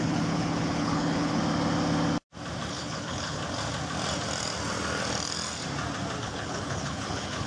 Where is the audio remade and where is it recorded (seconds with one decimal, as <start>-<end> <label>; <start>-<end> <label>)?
0.0-1.4 remade; 1.4-2.7 recorded; 2.7-3.4 remade; 3.4-6.2 recorded; 6.2-7.5 remade